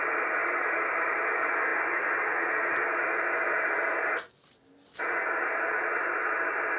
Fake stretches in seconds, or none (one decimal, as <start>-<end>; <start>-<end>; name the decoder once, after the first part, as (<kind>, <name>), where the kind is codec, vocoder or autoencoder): none